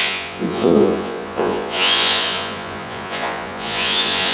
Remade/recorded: remade